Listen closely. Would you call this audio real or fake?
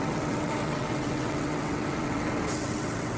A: fake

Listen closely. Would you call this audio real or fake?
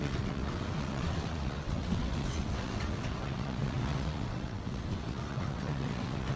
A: fake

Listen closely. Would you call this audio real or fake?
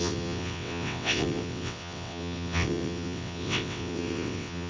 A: fake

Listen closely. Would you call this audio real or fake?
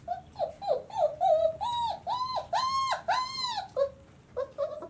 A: real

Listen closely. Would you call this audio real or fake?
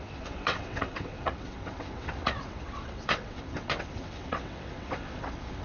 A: fake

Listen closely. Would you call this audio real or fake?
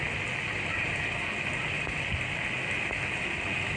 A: real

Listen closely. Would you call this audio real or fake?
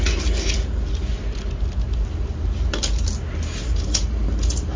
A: real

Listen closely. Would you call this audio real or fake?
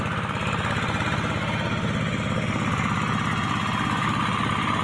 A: real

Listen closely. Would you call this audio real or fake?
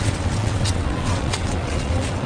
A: fake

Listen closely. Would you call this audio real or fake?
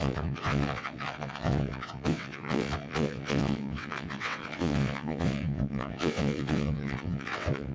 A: fake